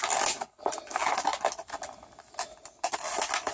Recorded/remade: recorded